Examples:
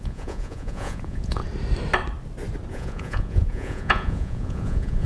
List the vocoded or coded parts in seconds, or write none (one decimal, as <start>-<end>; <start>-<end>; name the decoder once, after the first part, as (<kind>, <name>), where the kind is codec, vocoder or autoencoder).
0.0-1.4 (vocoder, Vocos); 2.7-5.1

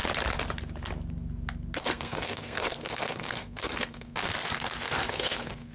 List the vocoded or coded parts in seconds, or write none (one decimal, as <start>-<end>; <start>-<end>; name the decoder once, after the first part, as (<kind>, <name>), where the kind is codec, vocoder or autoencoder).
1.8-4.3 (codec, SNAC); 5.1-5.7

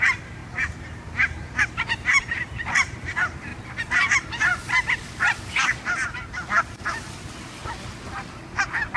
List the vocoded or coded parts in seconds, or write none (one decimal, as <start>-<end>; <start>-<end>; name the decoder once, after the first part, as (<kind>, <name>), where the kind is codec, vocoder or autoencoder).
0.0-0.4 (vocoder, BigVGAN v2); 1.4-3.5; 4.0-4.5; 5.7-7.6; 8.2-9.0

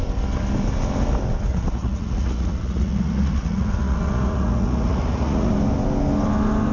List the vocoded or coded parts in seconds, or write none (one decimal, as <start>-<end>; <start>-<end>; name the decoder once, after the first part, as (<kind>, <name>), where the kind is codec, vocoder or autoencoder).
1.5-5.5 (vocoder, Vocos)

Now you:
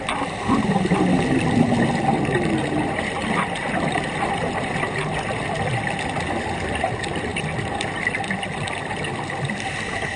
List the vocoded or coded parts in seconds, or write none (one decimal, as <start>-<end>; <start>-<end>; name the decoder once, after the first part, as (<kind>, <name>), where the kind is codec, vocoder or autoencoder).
none

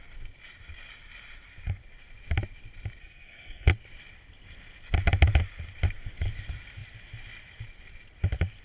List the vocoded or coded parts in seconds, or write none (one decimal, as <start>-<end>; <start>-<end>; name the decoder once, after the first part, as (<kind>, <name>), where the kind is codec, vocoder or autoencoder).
3.0-3.7 (codec, SNAC)